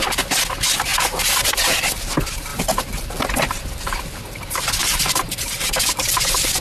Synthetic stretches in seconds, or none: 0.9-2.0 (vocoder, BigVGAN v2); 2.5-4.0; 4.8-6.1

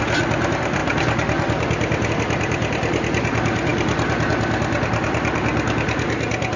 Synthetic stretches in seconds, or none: 0.0-3.7 (vocoder, BigVGAN v2); 4.3-5.5

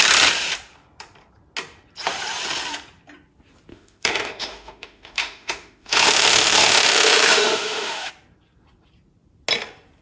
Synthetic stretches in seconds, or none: 3.7-8.1 (autoencoder, DAC-VAE)

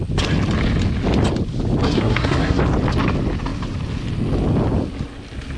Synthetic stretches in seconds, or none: 1.8-2.6 (codec, SNAC)